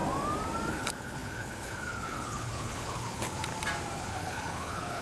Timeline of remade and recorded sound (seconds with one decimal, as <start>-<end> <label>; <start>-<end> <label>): 0.0-0.7 recorded; 0.7-3.5 remade; 3.5-4.0 recorded; 4.0-5.0 remade